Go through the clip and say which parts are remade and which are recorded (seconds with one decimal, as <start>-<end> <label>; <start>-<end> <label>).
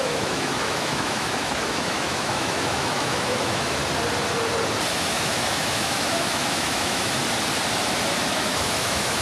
0.0-3.8 remade; 3.8-4.9 recorded; 4.9-7.2 remade; 7.2-8.3 recorded; 8.3-9.2 remade